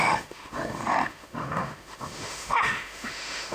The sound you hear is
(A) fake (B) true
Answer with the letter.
A